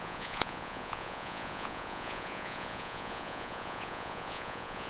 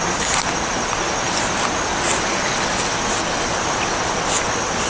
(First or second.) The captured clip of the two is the second